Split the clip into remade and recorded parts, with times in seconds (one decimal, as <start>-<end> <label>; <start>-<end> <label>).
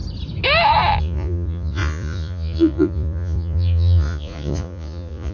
0.0-1.0 recorded; 1.0-5.3 remade